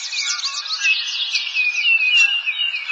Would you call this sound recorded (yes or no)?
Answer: yes